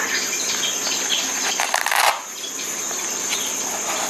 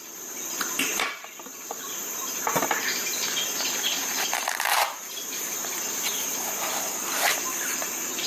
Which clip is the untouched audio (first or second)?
first